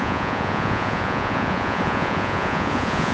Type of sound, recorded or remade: remade